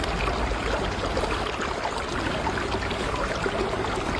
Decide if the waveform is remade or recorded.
recorded